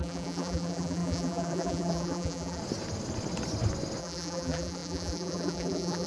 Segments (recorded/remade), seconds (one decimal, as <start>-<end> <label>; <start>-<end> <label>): 0.0-2.6 remade; 2.6-4.0 recorded; 4.0-6.1 remade